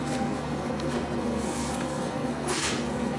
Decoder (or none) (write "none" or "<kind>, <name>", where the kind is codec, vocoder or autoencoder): codec, SNAC